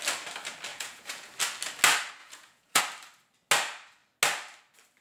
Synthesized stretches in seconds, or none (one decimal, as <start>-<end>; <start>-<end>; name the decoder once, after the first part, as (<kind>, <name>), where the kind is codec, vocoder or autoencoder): 0.7-1.3 (vocoder, Vocos); 2.2-2.8